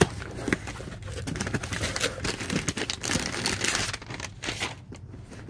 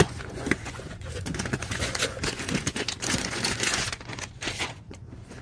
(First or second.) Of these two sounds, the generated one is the second